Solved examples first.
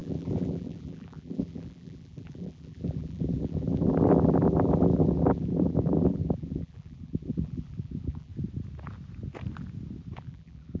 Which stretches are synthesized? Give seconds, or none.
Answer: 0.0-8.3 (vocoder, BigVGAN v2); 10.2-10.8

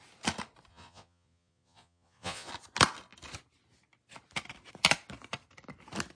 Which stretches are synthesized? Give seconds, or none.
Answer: 0.7-2.5 (vocoder, Vocos)

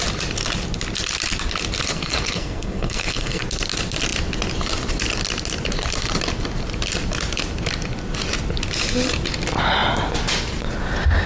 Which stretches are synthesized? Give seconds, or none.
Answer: 1.9-3.4 (codec, SNAC)